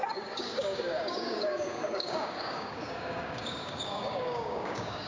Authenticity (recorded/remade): remade